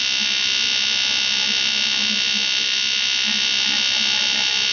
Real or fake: real